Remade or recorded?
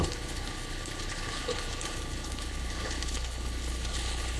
remade